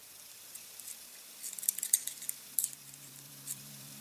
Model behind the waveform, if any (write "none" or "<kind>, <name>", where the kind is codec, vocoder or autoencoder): vocoder, BigVGAN v2